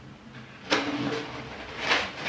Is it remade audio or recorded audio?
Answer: recorded